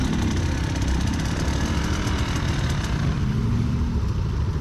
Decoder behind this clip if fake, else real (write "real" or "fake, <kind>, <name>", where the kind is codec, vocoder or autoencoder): real